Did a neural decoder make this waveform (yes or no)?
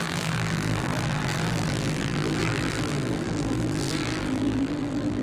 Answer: yes